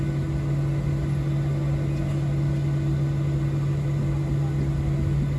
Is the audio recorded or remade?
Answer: recorded